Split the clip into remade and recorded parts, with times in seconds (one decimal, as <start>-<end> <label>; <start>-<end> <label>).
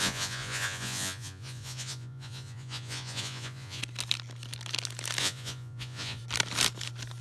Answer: 0.0-3.8 remade; 3.8-5.2 recorded; 5.2-6.2 remade; 6.2-7.2 recorded